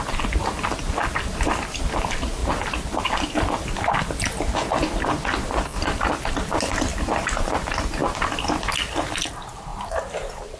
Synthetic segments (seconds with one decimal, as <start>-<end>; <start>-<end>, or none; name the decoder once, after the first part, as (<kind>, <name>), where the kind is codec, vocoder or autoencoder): 2.4-4.0 (vocoder, BigVGAN v2); 6.9-7.5; 9.7-10.6